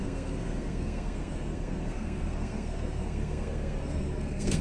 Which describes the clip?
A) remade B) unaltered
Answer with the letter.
A